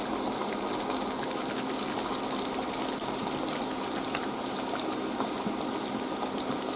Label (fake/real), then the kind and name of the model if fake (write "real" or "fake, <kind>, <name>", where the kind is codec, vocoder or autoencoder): real